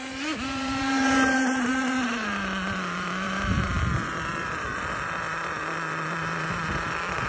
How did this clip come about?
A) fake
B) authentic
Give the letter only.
A